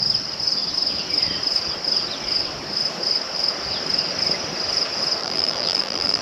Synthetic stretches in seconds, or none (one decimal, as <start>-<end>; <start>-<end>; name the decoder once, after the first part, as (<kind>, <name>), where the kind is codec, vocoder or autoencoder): 5.2-6.2 (vocoder, BigVGAN v2)